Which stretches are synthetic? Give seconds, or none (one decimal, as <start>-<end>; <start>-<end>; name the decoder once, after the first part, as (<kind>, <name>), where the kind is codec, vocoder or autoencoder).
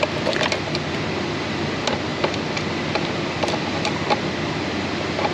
none